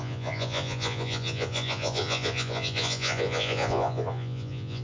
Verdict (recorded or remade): remade